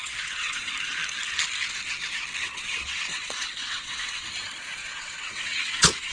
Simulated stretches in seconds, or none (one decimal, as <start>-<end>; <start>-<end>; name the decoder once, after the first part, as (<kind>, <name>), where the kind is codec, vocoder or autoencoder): 0.0-0.7 (vocoder, WaveNeXt); 2.4-4.2; 4.8-6.1